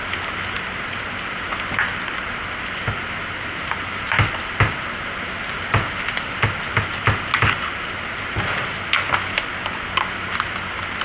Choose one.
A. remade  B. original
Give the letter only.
B